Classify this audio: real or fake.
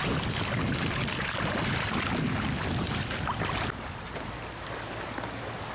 real